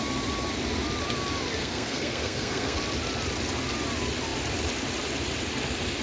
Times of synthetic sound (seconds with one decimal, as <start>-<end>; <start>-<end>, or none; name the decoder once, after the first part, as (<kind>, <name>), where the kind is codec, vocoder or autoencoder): 1.6-2.8 (codec, SNAC)